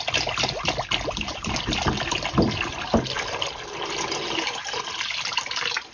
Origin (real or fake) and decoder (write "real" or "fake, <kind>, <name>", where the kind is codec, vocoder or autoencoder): real